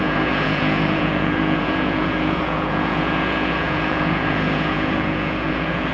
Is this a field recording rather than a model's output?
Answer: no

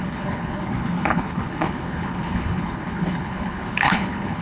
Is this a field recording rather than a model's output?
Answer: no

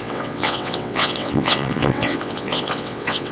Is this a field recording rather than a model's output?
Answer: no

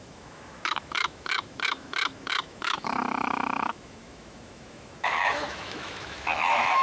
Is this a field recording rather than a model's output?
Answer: no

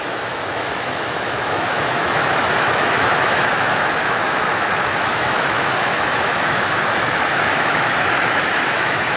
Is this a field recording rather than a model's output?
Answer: no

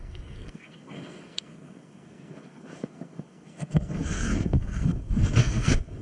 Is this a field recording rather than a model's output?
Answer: no